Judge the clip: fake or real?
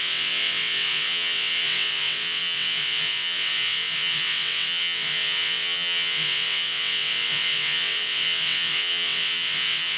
fake